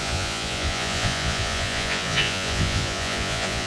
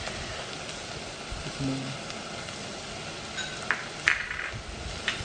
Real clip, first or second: second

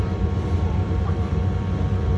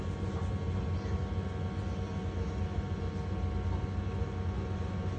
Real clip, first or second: second